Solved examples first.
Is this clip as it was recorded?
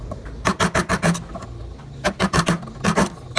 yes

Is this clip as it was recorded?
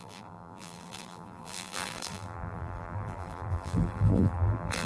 no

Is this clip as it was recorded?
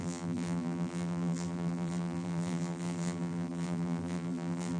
no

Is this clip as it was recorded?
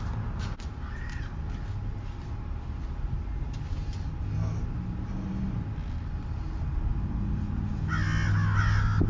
yes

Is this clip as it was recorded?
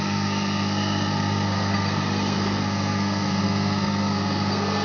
no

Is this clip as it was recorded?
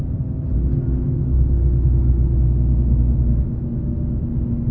yes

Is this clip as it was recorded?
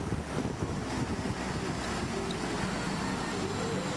yes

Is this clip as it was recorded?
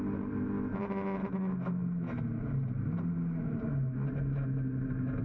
yes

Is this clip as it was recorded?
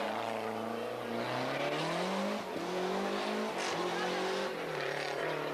yes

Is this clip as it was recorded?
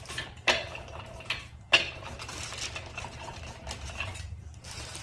no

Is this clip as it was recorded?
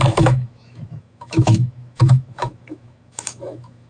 no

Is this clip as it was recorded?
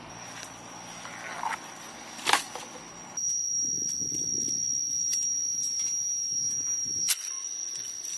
yes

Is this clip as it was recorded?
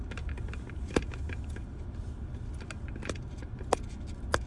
yes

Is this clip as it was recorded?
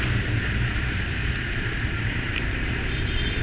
no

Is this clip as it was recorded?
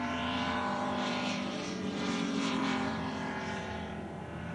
no